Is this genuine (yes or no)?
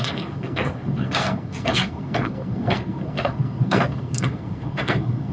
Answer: no